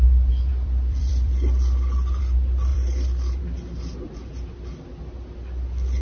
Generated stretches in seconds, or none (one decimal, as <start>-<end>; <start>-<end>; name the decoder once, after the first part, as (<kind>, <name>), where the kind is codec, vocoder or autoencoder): 0.5-2.2 (vocoder, BigVGAN v2); 2.7-3.4